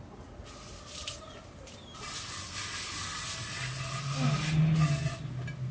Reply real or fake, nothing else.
real